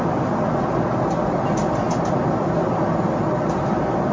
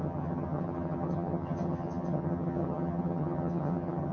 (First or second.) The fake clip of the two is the second